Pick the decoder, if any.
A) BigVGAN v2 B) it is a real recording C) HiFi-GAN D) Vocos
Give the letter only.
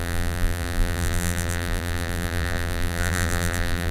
A